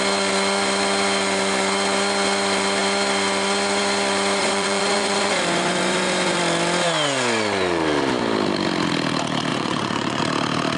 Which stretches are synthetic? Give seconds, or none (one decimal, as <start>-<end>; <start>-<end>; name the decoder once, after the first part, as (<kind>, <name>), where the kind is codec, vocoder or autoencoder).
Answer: 4.4-6.4 (vocoder, Vocos); 9.5-10.2

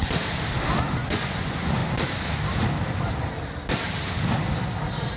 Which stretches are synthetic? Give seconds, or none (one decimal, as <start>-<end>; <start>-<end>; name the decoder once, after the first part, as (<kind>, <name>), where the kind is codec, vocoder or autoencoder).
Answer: 0.9-1.8 (vocoder, Vocos)

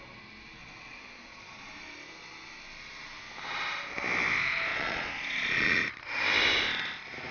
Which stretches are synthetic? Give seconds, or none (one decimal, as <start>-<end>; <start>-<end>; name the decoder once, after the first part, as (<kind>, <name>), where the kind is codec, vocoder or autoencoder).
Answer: 0.6-1.7 (vocoder, Vocos); 4.7-5.8

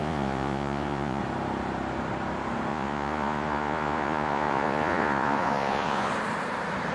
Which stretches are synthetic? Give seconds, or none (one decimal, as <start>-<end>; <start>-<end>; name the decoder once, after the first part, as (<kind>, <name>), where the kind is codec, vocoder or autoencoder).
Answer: 0.0-1.2 (vocoder, Vocos); 2.7-6.1

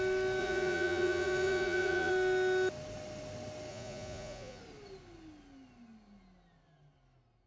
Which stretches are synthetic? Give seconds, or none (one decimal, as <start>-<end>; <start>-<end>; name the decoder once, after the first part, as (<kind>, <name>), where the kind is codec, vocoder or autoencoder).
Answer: 0.4-2.1 (vocoder, Vocos); 3.7-4.6

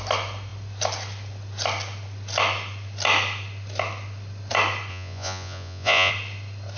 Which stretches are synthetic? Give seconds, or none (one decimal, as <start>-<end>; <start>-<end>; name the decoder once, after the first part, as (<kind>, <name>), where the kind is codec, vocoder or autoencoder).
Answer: 4.9-6.1 (vocoder, Vocos)